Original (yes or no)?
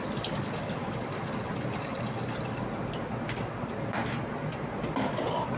yes